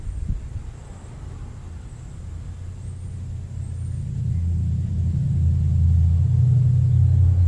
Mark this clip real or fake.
real